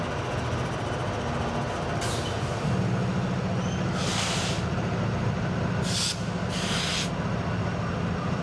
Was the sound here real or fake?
real